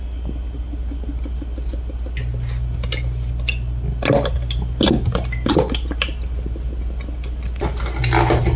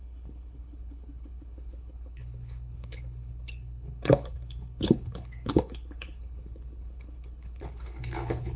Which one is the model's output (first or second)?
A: second